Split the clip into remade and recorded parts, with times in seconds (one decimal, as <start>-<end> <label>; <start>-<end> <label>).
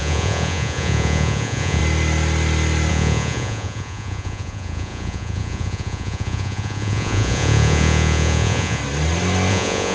0.0-1.8 remade; 1.8-2.9 recorded; 2.9-8.8 remade; 8.8-9.5 recorded; 9.5-9.9 remade